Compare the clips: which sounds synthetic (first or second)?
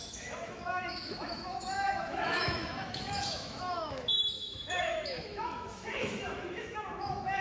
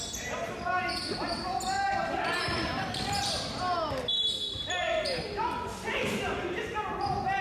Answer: first